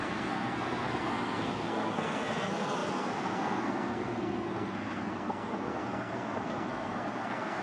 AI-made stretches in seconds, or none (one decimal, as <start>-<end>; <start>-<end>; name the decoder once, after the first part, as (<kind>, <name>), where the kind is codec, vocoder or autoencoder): 0.0-7.6 (codec, SNAC)